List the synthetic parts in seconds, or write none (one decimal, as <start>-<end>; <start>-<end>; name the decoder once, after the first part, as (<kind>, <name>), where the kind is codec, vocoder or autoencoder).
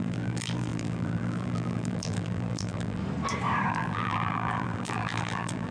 0.0-3.0 (vocoder, BigVGAN v2); 3.7-5.7